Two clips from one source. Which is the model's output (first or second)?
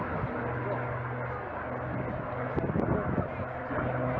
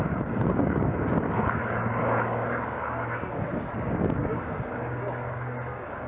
second